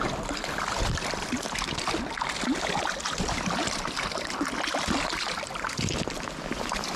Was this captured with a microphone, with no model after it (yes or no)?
yes